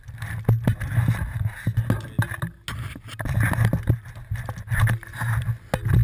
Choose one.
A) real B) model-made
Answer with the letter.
A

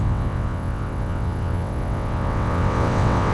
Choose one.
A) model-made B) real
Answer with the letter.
A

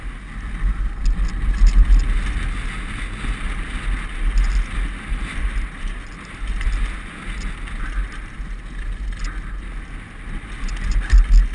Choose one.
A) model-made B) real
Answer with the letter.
B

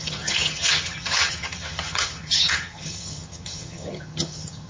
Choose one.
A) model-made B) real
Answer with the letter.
A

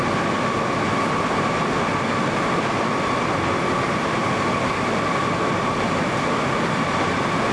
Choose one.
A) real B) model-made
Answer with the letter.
A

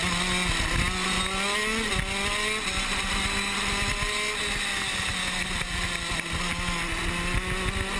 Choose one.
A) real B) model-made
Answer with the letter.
A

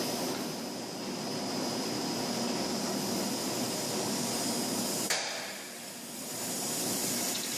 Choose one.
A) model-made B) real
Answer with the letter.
B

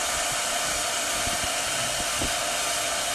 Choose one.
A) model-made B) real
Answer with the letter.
B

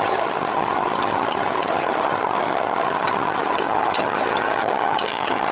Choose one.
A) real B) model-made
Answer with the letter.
B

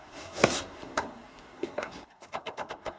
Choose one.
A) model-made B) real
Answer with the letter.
A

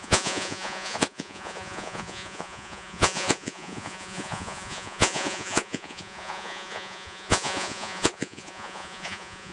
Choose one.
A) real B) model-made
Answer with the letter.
B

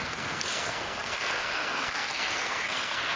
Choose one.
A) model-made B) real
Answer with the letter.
A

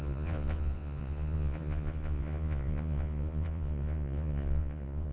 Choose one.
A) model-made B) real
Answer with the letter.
A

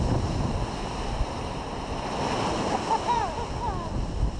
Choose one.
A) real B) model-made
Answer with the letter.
A